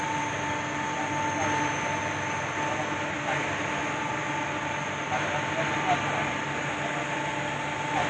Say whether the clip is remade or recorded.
recorded